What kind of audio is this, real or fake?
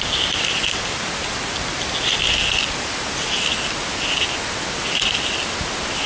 real